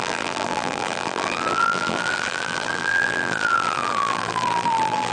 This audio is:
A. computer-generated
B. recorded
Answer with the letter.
A